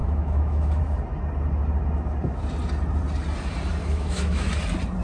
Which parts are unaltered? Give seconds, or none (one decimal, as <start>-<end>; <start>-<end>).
0.8-3.8; 4.5-5.0